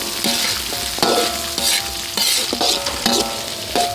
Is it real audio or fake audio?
real